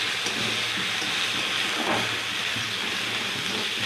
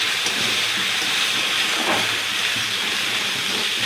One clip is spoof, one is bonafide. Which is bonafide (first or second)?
first